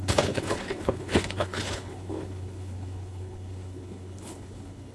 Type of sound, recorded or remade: remade